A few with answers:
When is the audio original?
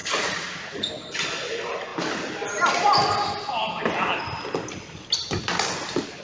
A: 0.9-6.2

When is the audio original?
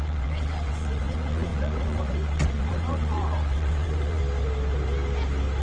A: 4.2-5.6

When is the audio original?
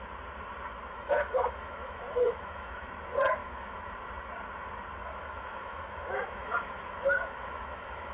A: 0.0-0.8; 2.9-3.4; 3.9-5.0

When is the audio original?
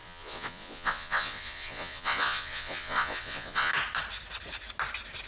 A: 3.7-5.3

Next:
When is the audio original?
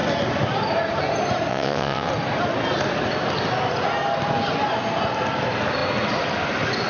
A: 0.0-1.5; 2.1-6.9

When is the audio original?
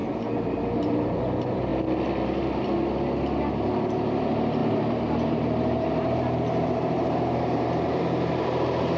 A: 1.2-4.6; 8.3-9.0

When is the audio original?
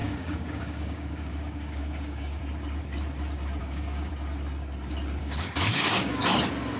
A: 2.4-3.6; 4.1-5.2; 6.2-6.8